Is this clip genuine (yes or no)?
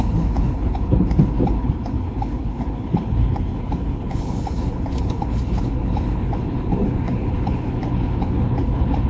no